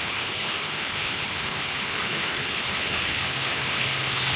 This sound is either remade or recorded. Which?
remade